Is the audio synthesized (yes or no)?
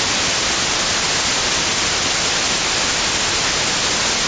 no